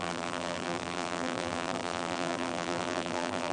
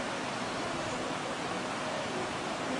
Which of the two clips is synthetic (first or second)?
first